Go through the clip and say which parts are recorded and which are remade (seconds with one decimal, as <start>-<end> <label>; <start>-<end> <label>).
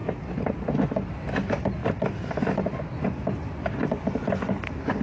0.0-5.0 recorded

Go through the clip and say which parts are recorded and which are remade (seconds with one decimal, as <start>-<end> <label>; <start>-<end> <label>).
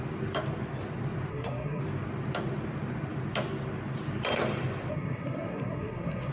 0.0-1.3 recorded; 1.3-1.8 remade; 1.8-4.9 recorded; 4.9-6.3 remade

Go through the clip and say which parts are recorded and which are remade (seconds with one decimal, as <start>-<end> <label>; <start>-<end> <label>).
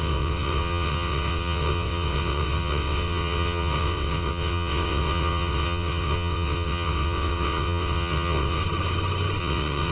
0.0-8.6 remade; 8.6-9.4 recorded; 9.4-9.9 remade